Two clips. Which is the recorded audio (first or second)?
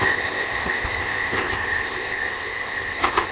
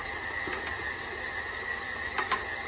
second